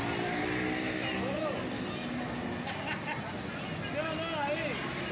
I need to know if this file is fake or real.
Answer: real